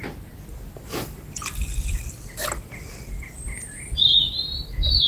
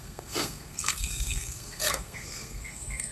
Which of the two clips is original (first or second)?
first